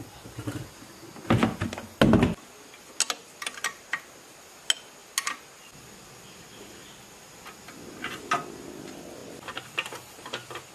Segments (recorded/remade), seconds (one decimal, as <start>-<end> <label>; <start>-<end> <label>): 0.0-3.2 recorded; 3.2-4.0 remade; 4.0-10.7 recorded